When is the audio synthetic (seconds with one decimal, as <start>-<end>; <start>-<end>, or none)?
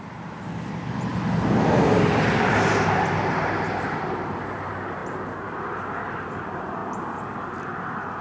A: 0.0-1.1; 3.3-5.0; 6.1-8.2